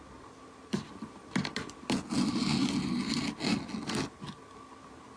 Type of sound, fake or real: real